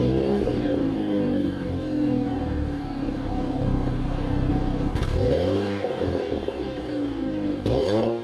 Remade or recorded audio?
remade